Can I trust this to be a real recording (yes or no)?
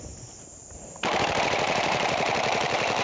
no